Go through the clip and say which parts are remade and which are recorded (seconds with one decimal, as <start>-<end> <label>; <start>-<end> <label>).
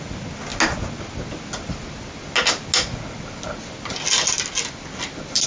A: 0.0-5.5 recorded